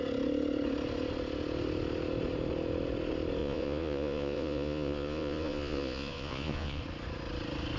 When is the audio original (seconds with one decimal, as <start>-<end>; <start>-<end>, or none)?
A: 0.0-3.4; 6.8-7.8